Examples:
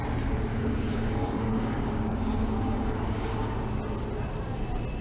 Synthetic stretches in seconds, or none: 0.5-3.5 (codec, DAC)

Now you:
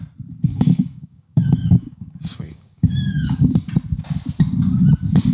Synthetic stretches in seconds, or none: 0.5-3.7 (codec, DAC)

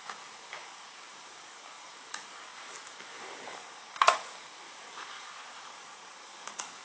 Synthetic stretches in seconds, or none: 0.0-6.8 (codec, DAC)

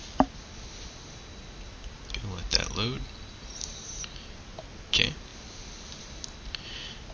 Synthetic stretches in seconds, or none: none

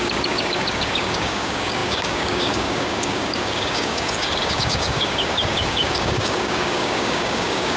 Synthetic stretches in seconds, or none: 0.0-7.8 (codec, DAC)

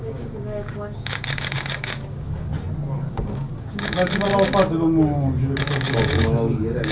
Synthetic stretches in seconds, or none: 0.0-2.5 (codec, DAC); 3.1-4.3; 5.6-6.9